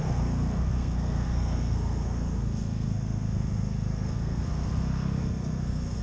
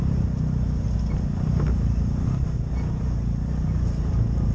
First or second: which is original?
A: second